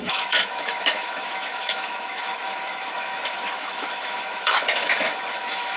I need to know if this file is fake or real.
fake